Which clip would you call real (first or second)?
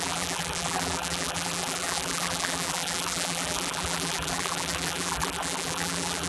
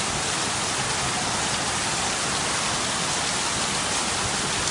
second